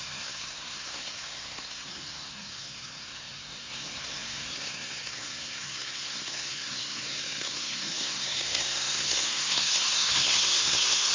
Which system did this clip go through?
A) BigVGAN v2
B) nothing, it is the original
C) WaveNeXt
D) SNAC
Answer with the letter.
D